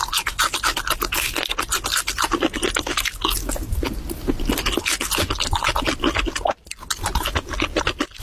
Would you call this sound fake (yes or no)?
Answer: no